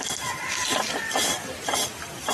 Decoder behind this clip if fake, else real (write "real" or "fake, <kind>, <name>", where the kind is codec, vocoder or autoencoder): real